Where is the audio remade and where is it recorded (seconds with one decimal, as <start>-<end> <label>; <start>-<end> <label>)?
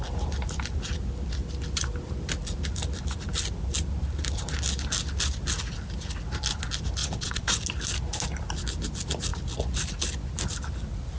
0.0-7.0 recorded; 7.0-7.6 remade; 7.6-11.2 recorded